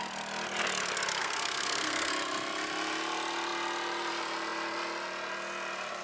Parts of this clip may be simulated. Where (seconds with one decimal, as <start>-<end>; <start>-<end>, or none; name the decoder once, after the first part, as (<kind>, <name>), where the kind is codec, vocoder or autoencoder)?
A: 1.2-2.1 (codec, SNAC)